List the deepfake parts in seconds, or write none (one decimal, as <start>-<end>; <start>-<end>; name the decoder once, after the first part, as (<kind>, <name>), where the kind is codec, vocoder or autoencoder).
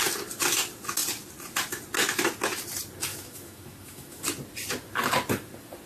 3.1-4.2 (autoencoder, DAC-VAE)